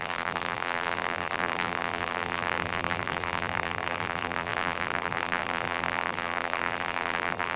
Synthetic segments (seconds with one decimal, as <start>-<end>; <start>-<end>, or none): 0.0-7.6